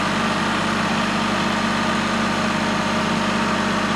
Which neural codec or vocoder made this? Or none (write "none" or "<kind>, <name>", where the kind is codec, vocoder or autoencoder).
none